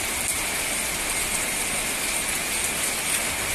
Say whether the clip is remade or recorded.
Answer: recorded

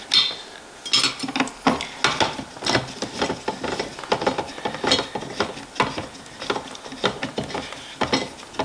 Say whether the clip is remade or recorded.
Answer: recorded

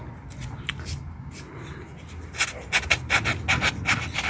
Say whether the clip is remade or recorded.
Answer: recorded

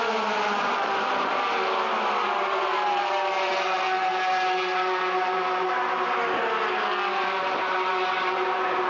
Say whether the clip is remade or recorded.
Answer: recorded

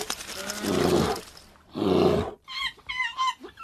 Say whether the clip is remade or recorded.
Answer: recorded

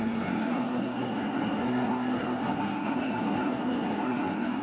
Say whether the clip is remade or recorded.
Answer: remade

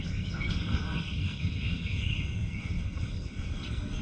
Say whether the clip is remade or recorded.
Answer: remade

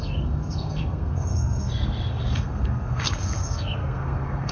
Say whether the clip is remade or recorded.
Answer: remade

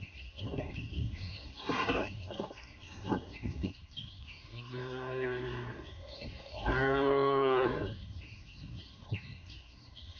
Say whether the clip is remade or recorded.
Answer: remade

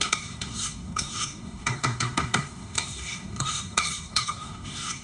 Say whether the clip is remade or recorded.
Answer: remade